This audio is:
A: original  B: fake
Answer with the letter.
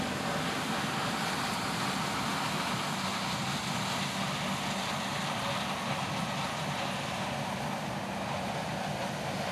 A